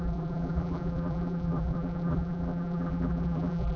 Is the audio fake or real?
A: fake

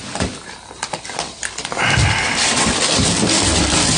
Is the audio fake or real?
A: fake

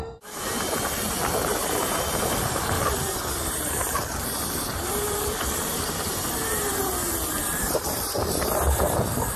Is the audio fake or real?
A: fake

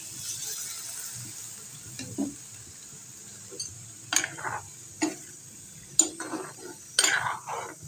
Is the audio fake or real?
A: real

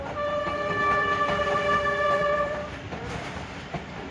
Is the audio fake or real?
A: fake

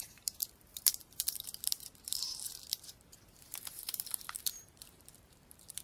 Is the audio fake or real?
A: fake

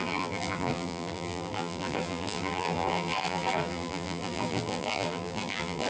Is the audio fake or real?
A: fake